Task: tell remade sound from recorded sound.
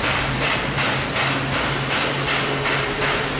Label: recorded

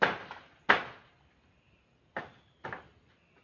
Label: recorded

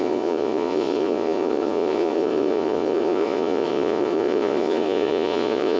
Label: remade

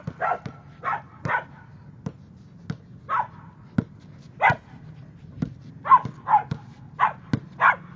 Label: recorded